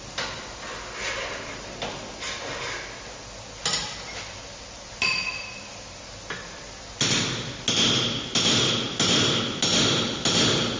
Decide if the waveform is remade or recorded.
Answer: recorded